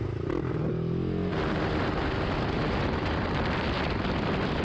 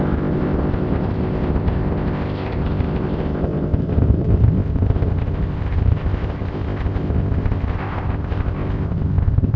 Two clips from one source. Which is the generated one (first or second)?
second